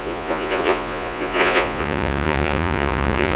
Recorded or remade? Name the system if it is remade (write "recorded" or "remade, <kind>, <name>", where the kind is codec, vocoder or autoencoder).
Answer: remade, vocoder, Vocos